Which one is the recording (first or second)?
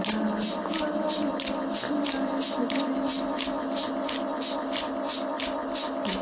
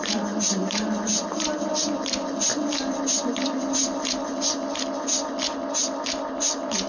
first